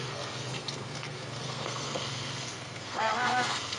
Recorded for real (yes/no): no